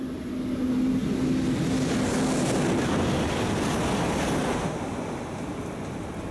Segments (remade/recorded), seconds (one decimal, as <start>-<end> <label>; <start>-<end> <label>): 0.0-6.3 recorded